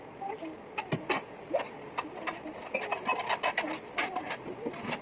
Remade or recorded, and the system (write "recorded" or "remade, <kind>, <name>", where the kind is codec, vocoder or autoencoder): recorded